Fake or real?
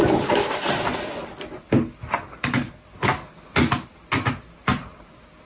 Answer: real